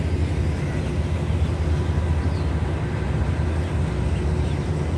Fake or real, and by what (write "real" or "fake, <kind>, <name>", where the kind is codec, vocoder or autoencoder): real